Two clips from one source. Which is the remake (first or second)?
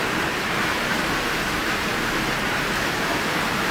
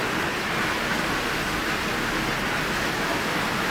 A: first